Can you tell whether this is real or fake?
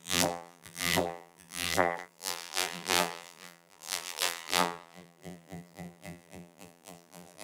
fake